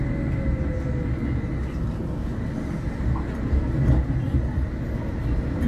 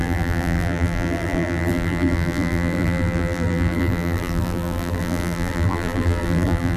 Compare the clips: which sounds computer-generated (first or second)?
second